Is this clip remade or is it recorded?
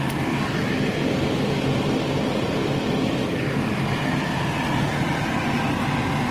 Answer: recorded